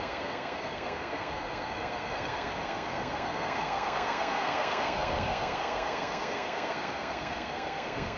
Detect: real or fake fake